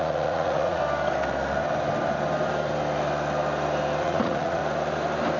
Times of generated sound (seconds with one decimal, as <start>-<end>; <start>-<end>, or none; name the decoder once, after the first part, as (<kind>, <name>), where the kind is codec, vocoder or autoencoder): 0.0-0.8 (vocoder, Vocos); 4.0-4.6